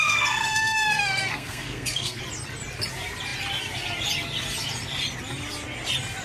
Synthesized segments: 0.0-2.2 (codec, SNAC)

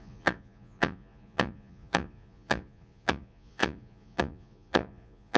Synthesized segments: 0.0-5.4 (vocoder, Vocos)

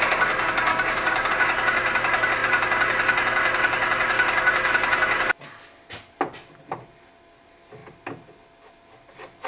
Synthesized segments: 0.7-1.3 (codec, DAC)

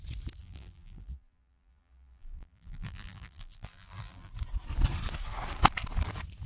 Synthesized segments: 0.4-4.3 (vocoder, BigVGAN v2)

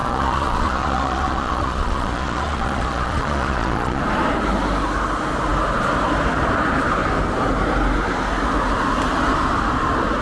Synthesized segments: 0.0-4.0 (vocoder, Vocos)

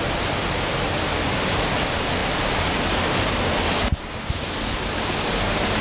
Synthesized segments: none

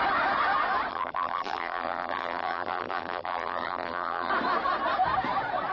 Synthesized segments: 0.9-4.3 (vocoder, BigVGAN v2)

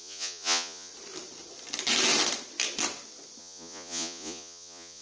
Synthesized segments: 0.0-0.9 (vocoder, Vocos); 3.4-5.0